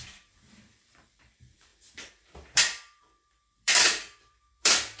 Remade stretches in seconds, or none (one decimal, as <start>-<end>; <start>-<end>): 0.0-5.0

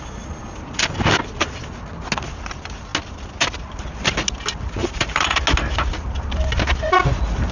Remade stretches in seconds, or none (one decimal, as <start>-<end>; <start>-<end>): 4.8-5.4

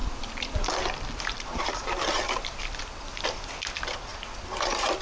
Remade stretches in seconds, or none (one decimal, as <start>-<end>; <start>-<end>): 0.0-3.0

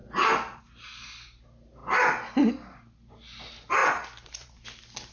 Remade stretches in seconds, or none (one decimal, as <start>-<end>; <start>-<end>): 3.8-4.5

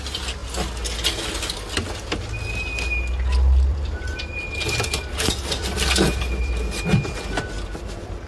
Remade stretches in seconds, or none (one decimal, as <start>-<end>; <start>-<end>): 3.7-6.8

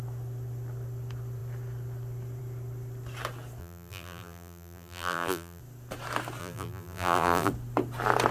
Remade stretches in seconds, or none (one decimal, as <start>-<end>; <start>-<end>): 3.6-5.6; 6.4-7.5

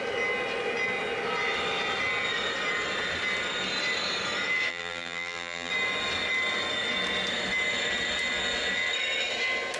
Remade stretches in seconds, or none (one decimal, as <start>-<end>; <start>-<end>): 4.7-5.7

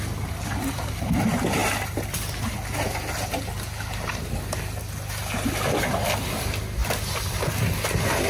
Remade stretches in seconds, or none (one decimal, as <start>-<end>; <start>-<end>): 1.6-2.7; 5.2-5.8; 6.8-7.5